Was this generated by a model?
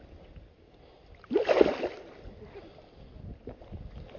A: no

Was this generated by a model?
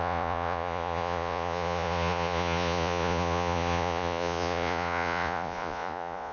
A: yes